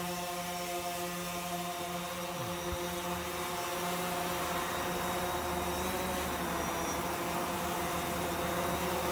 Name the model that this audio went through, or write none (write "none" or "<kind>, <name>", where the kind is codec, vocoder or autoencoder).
none